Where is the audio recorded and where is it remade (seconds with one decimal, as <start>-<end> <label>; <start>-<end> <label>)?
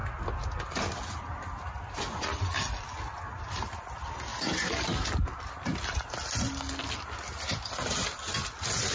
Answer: 0.0-8.9 recorded